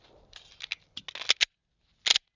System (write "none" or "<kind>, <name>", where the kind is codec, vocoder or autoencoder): none